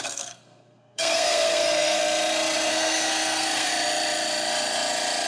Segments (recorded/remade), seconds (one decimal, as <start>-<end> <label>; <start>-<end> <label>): 0.0-2.0 remade; 2.0-2.7 recorded; 2.7-3.7 remade; 3.7-5.3 recorded